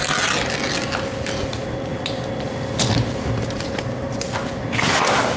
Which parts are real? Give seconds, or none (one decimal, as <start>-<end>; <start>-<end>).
0.0-5.4